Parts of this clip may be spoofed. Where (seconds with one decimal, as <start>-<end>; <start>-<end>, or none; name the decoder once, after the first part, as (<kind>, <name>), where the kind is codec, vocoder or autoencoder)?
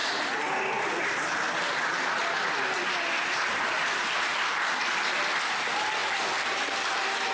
none